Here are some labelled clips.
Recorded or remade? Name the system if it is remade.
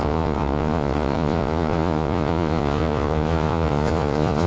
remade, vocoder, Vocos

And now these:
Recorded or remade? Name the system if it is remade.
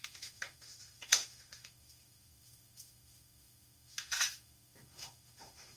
remade, autoencoder, DAC-VAE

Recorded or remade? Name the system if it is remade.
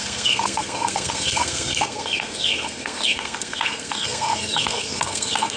remade, codec, SNAC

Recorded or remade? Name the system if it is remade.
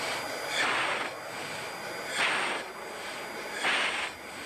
recorded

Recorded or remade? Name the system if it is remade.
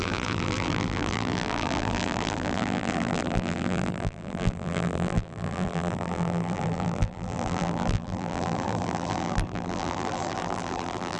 remade, vocoder, BigVGAN v2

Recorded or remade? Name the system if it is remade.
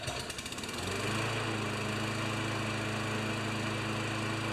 recorded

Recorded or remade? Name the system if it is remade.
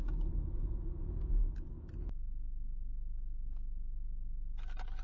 recorded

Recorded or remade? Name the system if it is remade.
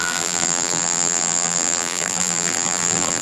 remade, vocoder, BigVGAN v2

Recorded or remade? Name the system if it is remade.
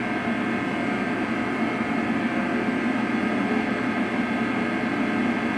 recorded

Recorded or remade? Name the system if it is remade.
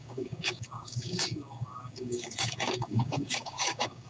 remade, codec, DAC